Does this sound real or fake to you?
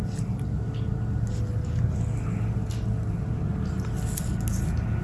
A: real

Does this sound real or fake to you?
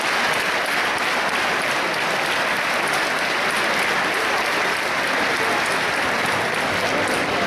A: real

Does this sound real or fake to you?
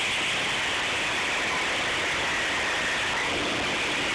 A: real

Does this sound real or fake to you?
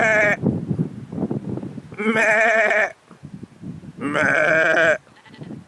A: real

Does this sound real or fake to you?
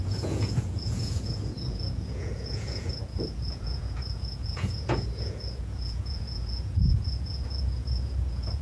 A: fake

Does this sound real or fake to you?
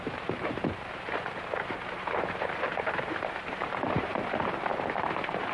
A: fake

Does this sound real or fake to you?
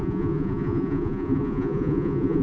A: fake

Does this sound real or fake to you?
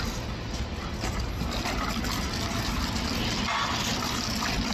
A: real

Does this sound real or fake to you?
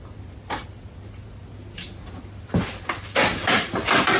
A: real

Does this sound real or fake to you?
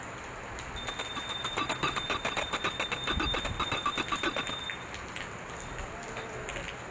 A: real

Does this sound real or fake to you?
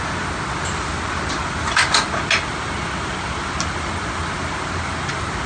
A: real